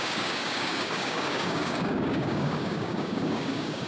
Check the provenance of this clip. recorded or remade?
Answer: remade